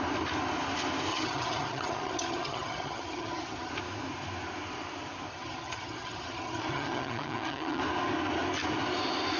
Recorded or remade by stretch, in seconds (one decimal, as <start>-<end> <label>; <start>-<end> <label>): 0.0-1.1 recorded; 1.1-3.7 remade; 3.7-5.3 recorded; 5.3-7.8 remade; 7.8-9.4 recorded